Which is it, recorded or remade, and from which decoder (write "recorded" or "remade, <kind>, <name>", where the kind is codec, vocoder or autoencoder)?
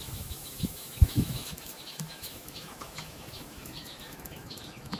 remade, autoencoder, DAC-VAE